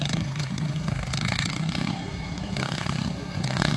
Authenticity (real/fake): fake